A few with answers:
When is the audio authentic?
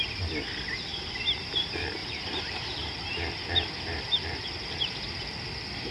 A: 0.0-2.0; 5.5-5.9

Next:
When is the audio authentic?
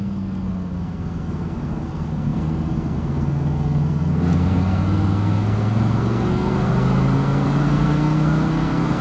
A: none